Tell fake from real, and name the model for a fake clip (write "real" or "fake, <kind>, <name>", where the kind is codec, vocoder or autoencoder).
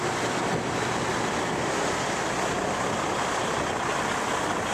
real